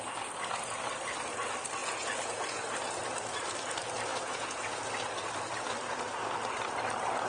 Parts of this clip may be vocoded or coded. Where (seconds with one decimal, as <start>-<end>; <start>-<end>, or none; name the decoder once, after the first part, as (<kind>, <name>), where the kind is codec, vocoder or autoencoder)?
1.8-2.6 (vocoder, Vocos); 4.1-4.8